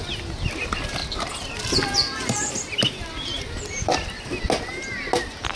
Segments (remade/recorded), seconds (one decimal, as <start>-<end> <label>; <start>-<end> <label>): 0.0-5.6 recorded